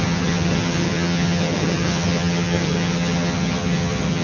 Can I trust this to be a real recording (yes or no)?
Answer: no